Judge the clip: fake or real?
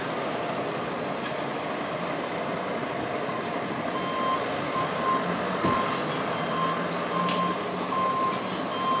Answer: real